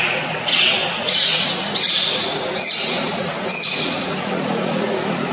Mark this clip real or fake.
fake